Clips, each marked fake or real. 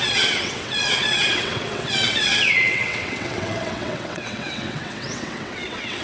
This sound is fake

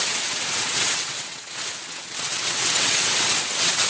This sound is fake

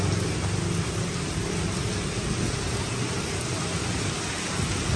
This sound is real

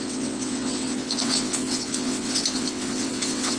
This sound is fake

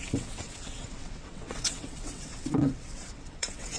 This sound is fake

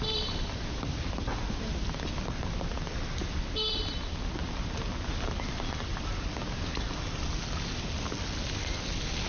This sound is real